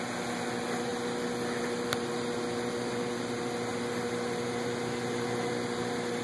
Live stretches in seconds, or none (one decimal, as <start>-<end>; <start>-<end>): 0.0-0.9; 2.1-3.7; 5.5-6.2